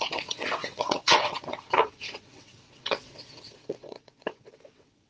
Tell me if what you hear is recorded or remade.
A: remade